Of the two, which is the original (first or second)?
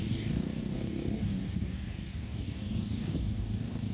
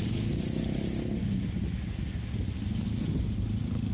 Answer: second